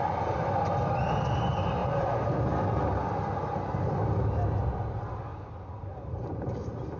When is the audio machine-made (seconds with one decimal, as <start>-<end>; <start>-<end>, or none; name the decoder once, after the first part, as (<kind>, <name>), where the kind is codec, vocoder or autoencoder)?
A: 1.8-2.3 (vocoder, BigVGAN v2); 5.3-7.0